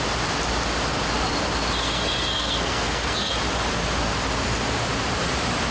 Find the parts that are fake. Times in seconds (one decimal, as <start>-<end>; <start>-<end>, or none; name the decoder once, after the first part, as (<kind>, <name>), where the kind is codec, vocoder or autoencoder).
1.8-3.3 (codec, SNAC)